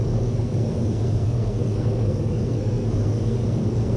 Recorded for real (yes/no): no